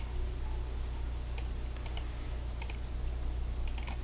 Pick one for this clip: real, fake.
real